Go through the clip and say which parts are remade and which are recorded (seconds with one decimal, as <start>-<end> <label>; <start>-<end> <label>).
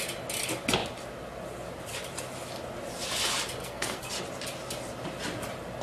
0.0-3.6 recorded; 3.6-4.1 remade; 4.1-5.8 recorded